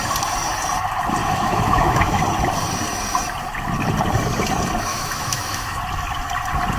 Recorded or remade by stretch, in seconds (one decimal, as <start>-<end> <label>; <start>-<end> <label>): 0.0-1.2 recorded; 1.2-2.2 remade; 2.2-4.9 recorded; 4.9-5.8 remade; 5.8-6.8 recorded